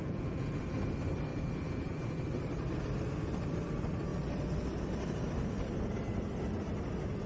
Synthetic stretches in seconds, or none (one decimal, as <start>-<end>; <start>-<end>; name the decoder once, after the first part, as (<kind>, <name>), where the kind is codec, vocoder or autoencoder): 0.0-0.6 (vocoder, Vocos); 1.3-2.2